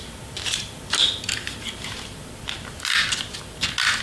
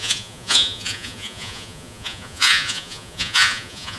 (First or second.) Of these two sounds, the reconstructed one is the second